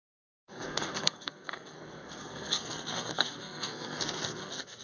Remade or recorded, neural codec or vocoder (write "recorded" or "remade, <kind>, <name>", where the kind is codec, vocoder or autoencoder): remade, codec, SNAC